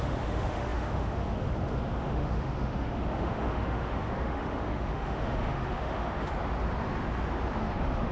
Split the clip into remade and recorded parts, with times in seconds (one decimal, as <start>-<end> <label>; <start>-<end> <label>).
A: 0.0-6.3 remade; 6.3-7.6 recorded; 7.6-8.1 remade